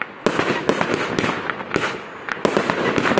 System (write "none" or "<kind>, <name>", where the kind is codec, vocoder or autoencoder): none